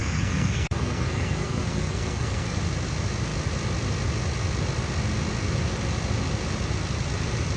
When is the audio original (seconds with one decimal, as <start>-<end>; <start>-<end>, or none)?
2.6-7.6